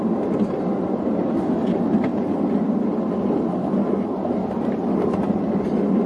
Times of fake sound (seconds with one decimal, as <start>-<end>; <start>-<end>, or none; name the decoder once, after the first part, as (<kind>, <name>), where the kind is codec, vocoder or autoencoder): none